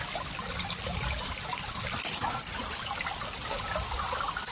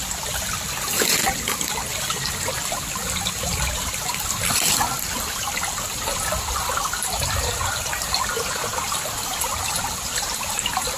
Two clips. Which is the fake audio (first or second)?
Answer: first